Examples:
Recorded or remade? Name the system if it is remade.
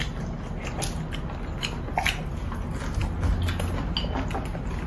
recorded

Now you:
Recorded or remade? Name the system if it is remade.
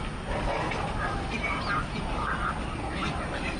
recorded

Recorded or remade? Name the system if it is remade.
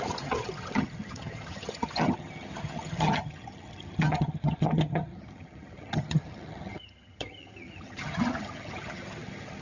remade, vocoder, HiFi-GAN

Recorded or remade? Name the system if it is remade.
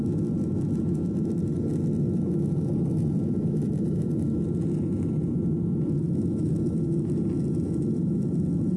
recorded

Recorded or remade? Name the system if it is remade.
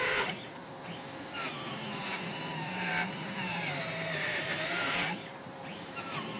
remade, vocoder, BigVGAN v2